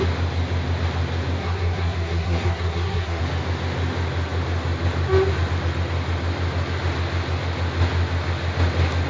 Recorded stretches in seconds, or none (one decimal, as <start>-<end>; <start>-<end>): 0.0-1.4; 3.2-9.1